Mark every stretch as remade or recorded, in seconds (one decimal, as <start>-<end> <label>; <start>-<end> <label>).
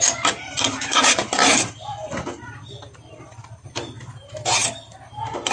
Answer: 0.0-1.2 recorded; 1.2-3.8 remade; 3.8-4.6 recorded; 4.6-5.5 remade